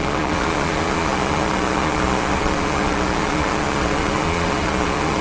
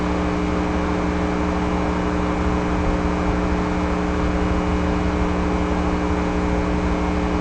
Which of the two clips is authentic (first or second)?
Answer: second